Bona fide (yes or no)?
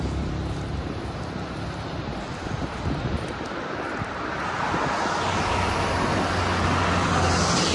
yes